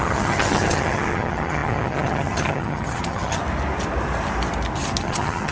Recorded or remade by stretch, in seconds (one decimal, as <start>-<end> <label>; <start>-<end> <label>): 0.0-3.4 remade; 3.4-5.0 recorded; 5.0-5.5 remade